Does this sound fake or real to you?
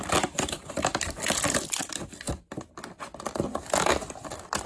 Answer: real